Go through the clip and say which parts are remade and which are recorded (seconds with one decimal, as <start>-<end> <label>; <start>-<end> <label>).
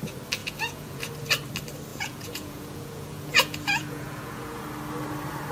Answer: 0.0-0.4 recorded; 0.4-1.1 remade; 1.1-1.9 recorded; 1.9-4.6 remade; 4.6-5.5 recorded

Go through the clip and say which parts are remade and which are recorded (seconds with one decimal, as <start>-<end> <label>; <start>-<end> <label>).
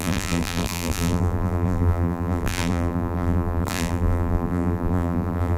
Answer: 0.0-5.6 remade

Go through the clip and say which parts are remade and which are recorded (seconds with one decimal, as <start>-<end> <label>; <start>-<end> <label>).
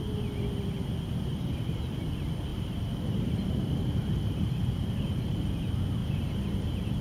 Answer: 0.0-1.3 recorded; 1.3-2.0 remade; 2.0-2.5 recorded; 2.5-5.5 remade; 5.5-6.0 recorded; 6.0-7.0 remade